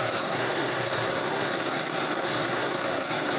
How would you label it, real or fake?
fake